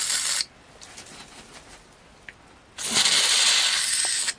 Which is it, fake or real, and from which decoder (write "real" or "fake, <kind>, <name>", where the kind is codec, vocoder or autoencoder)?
real